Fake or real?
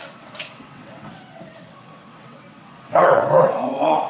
fake